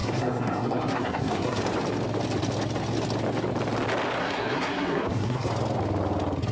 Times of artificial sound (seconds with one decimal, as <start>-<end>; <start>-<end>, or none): 0.0-1.6; 4.2-5.5